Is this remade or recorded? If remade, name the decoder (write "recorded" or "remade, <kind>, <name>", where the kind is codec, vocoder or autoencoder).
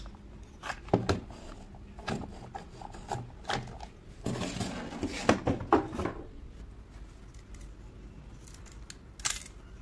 recorded